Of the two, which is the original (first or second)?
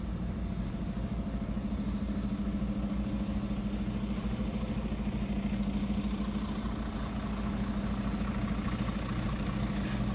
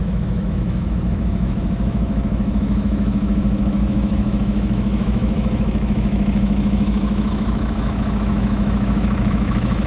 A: first